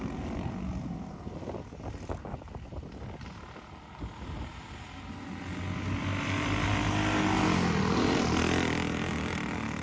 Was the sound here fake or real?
real